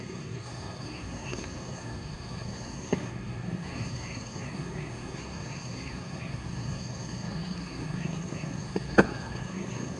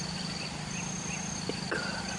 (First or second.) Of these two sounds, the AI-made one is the first